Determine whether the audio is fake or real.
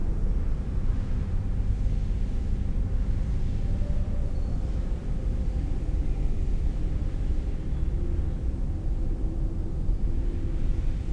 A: real